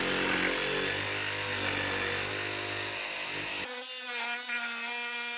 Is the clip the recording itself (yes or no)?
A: yes